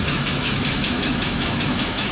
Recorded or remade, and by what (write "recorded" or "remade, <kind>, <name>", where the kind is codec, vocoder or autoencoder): remade, autoencoder, DAC-VAE